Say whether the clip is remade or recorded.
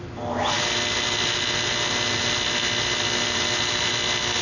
recorded